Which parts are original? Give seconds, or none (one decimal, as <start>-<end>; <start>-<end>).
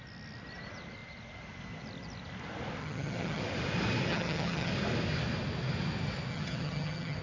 0.0-2.8; 3.4-4.1; 4.7-6.3